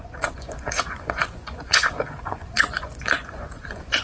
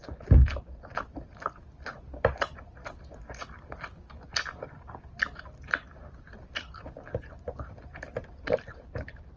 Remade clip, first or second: first